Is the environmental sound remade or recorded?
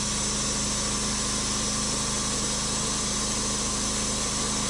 recorded